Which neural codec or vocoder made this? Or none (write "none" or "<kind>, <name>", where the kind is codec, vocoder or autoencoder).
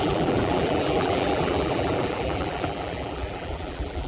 vocoder, BigVGAN v2